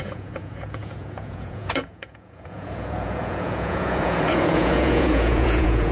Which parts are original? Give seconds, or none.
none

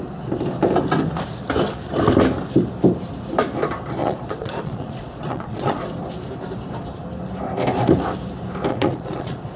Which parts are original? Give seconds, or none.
0.0-4.0; 5.8-8.7

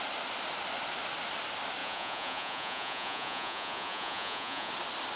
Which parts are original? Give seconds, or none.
0.0-1.8; 4.7-5.2

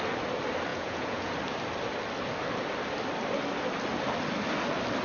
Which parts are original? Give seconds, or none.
0.0-0.7; 1.3-5.0